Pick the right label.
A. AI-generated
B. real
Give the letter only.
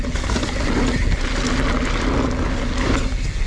B